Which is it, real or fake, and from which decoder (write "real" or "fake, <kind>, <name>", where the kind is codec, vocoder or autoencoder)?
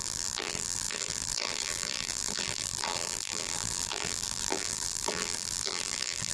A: fake, vocoder, BigVGAN v2